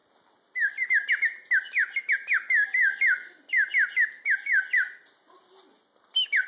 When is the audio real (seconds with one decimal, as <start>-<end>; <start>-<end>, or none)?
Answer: 0.0-6.5